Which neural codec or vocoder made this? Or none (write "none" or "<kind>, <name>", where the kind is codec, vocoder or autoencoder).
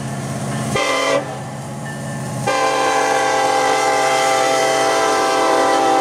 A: vocoder, BigVGAN v2